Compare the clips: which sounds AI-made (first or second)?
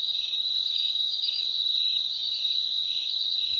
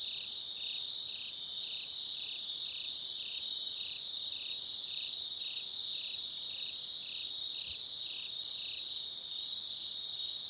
first